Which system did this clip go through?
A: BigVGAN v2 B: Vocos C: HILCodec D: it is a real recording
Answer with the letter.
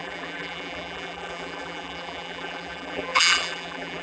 A